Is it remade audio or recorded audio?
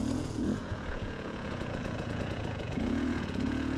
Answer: remade